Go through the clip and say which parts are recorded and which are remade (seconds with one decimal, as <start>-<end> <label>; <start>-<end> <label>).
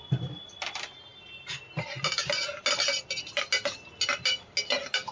0.0-5.1 recorded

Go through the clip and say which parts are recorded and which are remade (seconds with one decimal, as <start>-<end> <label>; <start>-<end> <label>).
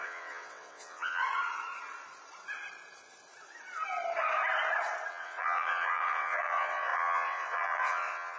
0.0-1.2 remade; 1.2-5.1 recorded; 5.1-8.4 remade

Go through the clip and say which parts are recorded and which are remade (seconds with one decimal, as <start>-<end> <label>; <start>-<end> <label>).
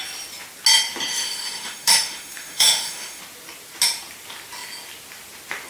0.0-1.1 recorded; 1.1-3.2 remade; 3.2-5.7 recorded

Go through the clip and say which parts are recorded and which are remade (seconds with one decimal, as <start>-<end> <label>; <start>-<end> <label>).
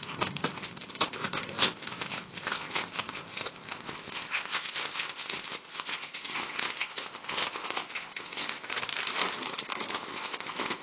0.0-8.7 remade; 8.7-9.9 recorded; 9.9-10.8 remade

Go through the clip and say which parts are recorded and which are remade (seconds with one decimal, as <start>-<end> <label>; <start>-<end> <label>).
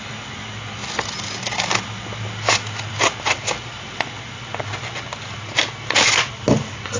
0.0-7.0 recorded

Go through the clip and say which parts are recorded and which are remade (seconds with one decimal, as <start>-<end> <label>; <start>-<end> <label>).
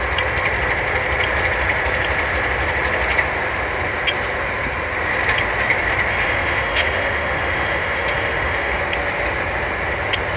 0.0-6.1 recorded; 6.1-8.8 remade; 8.8-10.4 recorded